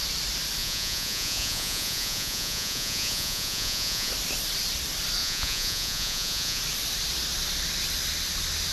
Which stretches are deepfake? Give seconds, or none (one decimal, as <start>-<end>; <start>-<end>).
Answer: 0.6-4.1; 5.2-6.6